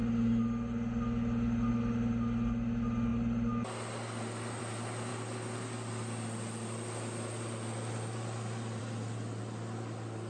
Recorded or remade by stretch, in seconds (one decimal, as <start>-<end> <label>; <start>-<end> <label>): 0.0-10.3 recorded